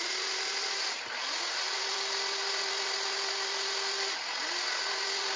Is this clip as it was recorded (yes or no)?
yes